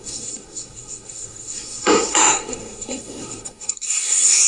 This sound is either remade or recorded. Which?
remade